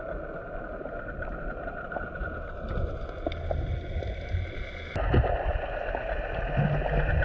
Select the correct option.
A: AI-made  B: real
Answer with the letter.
B